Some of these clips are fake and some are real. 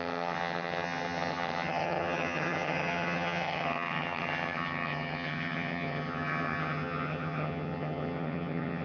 fake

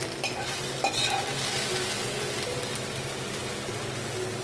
real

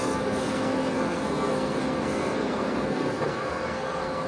fake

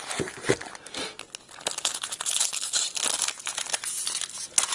real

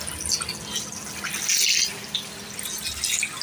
real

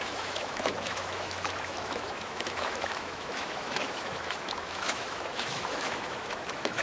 fake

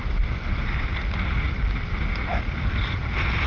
real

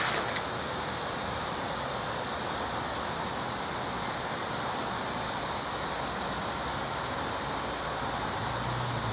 real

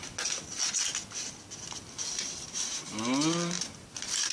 real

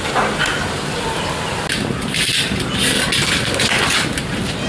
real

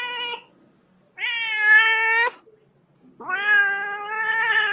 real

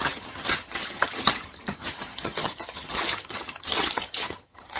fake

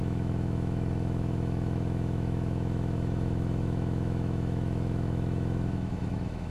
fake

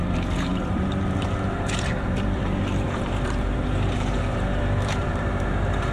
fake